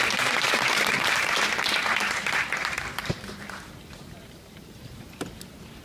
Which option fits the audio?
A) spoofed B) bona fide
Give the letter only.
A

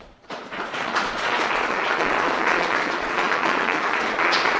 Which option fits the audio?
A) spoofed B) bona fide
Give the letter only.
A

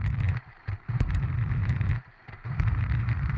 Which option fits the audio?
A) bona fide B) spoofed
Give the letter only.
B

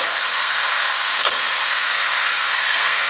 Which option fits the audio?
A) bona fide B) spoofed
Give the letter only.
B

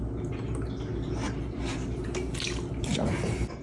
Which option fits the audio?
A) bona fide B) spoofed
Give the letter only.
A